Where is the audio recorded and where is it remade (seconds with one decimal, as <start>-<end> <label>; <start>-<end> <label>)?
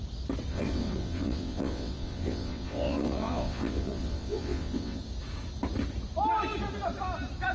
0.0-0.5 recorded; 0.5-5.0 remade; 5.0-7.5 recorded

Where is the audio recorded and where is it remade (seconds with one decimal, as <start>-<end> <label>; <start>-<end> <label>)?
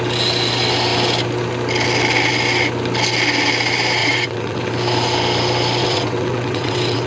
0.0-4.0 recorded; 4.0-4.7 remade; 4.7-5.8 recorded; 5.8-7.1 remade